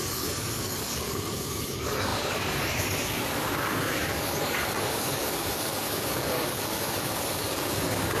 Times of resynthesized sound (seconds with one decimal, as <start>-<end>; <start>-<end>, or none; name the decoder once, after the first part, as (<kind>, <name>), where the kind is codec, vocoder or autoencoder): 0.0-8.2 (codec, DAC)